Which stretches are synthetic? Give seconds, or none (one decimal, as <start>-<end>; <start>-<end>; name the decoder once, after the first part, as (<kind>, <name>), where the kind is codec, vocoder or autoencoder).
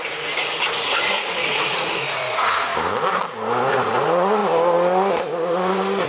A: 0.0-0.5 (vocoder, Vocos); 1.1-2.7; 3.7-4.4